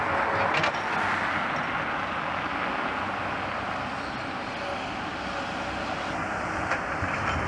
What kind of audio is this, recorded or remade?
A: recorded